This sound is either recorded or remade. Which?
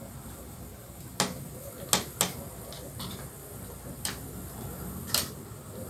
recorded